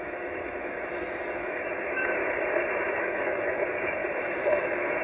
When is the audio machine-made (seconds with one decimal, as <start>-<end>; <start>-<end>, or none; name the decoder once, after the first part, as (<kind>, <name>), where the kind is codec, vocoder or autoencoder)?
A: 0.0-2.2 (autoencoder, DAC-VAE); 3.0-4.0; 4.6-5.0